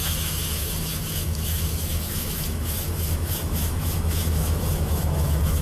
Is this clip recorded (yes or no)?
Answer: no